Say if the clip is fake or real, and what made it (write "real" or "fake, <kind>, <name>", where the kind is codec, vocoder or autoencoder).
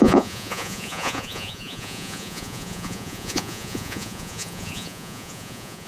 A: fake, vocoder, Vocos